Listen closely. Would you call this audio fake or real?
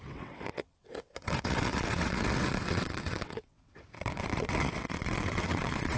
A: fake